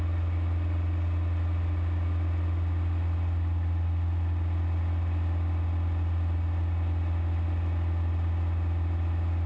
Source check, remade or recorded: recorded